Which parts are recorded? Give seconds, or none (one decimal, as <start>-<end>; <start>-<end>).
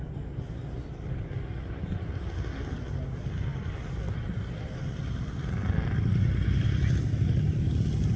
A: 0.0-8.2